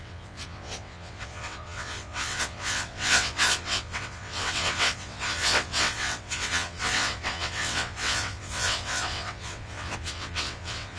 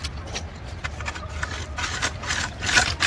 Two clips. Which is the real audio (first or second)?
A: second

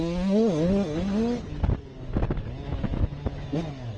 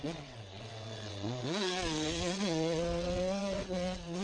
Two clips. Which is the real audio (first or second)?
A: first